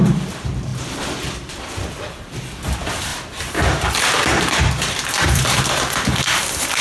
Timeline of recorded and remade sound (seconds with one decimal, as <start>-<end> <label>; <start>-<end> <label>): 0.0-3.1 recorded; 3.1-5.6 remade; 5.6-6.8 recorded